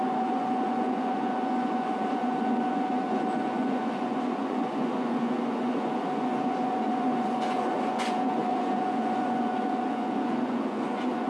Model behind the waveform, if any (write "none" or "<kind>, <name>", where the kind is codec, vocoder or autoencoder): vocoder, Vocos